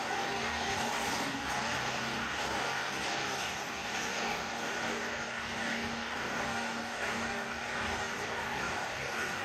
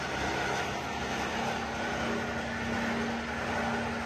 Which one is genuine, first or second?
second